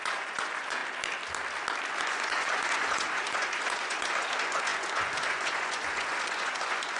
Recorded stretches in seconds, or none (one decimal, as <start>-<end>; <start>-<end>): 0.8-2.0